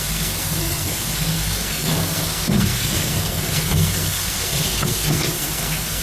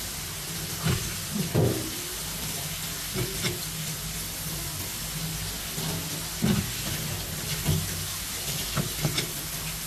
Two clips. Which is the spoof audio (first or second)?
first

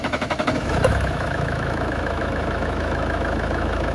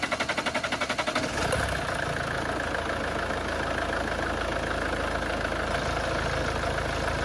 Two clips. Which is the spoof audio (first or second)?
first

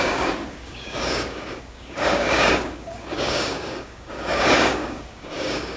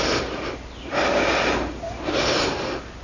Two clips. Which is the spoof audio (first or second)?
first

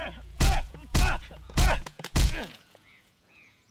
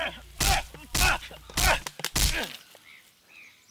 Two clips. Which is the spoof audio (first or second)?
first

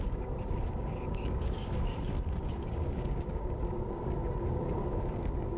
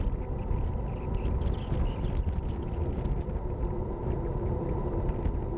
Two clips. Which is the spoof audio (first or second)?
first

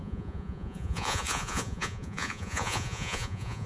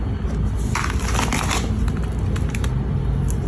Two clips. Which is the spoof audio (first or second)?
first